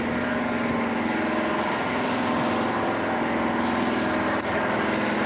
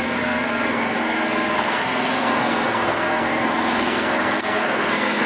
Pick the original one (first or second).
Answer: first